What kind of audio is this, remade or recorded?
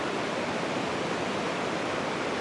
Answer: recorded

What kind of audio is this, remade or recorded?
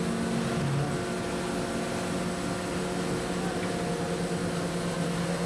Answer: recorded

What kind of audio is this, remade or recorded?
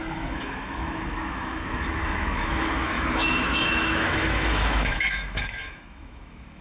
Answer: remade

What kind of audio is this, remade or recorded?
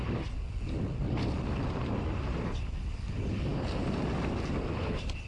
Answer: recorded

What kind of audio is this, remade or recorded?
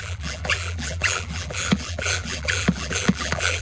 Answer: remade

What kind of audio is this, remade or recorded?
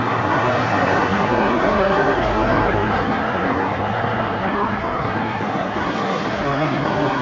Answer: remade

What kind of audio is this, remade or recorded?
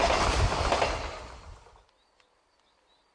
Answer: recorded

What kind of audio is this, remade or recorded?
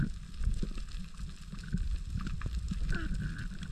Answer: recorded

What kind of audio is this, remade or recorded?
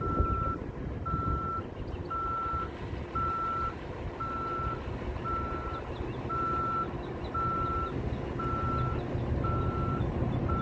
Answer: recorded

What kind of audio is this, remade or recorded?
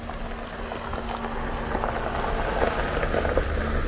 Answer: recorded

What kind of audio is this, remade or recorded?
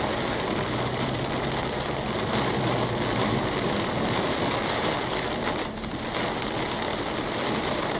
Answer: recorded